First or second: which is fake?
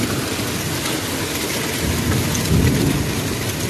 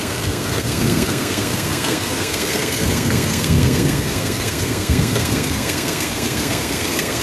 second